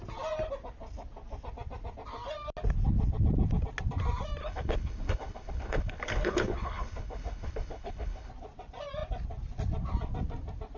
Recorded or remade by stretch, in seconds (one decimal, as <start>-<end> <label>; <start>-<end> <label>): 0.0-4.4 recorded; 4.4-8.3 remade; 8.3-10.8 recorded